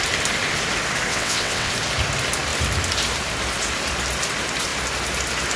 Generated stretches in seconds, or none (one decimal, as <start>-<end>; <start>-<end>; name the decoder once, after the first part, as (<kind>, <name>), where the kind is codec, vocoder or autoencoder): 1.1-1.7 (vocoder, WaveNeXt)